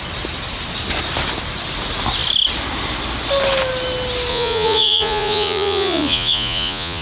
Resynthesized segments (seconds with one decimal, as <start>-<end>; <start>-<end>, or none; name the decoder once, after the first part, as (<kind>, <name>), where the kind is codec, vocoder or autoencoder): 4.3-7.0 (vocoder, Vocos)

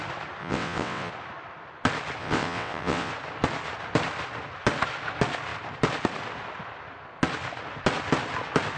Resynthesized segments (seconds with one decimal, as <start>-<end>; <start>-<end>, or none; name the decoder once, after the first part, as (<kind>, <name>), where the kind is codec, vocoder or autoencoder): 0.4-1.1 (vocoder, WaveNeXt); 2.2-3.1

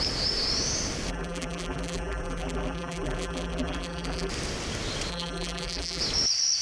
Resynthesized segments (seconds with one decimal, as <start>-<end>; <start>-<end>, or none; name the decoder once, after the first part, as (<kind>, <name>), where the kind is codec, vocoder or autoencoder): 1.1-4.3 (vocoder, BigVGAN v2); 5.1-6.0

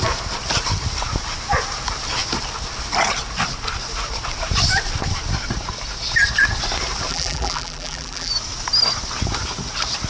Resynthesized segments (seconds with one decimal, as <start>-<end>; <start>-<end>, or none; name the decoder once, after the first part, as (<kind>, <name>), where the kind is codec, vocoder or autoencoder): 7.1-8.3 (vocoder, BigVGAN v2)

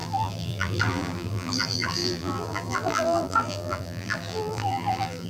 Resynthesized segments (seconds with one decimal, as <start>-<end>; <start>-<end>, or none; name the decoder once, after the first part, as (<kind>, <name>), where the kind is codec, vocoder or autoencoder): 0.0-5.3 (vocoder, BigVGAN v2)

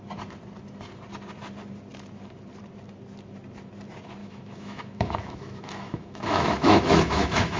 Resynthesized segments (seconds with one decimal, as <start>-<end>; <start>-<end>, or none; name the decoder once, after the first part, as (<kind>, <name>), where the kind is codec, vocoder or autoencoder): 4.2-7.6 (autoencoder, DAC-VAE)

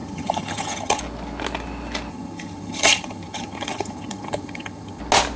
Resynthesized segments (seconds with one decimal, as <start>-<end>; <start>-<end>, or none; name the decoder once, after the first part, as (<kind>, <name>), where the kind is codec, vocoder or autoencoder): 0.0-1.0 (vocoder, HiFi-GAN); 2.1-5.0

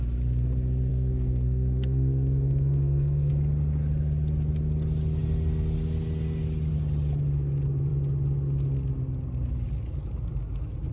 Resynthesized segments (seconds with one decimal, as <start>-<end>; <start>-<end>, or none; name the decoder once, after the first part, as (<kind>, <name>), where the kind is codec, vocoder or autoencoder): 0.9-3.3 (codec, SNAC)